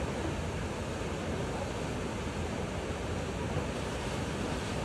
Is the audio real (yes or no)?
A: yes